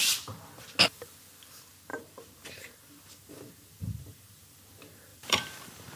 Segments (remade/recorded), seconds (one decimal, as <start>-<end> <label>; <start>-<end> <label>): 0.0-1.9 recorded; 1.9-2.7 remade; 2.7-5.1 recorded; 5.1-6.0 remade